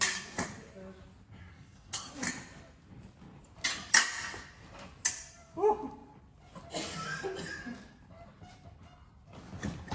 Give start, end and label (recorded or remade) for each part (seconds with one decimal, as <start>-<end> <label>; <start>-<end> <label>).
0.0-1.5 recorded; 1.5-2.1 remade; 2.1-9.9 recorded